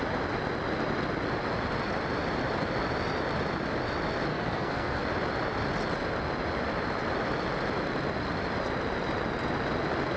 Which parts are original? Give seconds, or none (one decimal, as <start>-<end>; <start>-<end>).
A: 0.0-4.3; 5.0-10.2

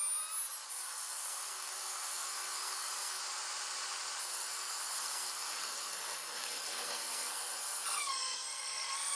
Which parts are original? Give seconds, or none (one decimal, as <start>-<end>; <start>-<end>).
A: 0.0-0.7; 3.2-4.2